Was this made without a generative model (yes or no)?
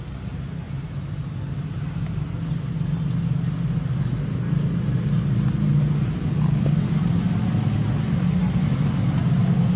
yes